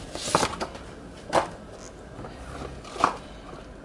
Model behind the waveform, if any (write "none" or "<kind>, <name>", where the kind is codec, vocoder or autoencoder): none